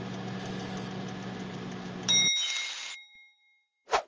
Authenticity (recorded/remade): recorded